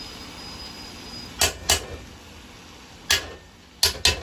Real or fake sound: real